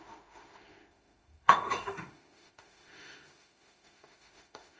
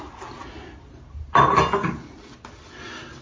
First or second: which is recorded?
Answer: second